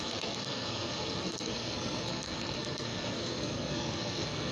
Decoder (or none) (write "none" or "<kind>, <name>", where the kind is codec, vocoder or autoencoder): codec, SNAC